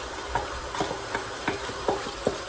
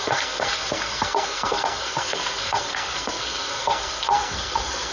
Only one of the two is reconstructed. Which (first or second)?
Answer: second